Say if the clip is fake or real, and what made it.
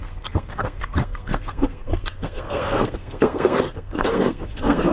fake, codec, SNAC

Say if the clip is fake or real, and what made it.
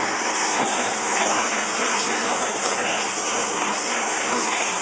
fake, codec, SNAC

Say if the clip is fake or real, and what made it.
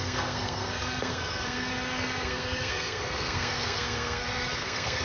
fake, codec, SNAC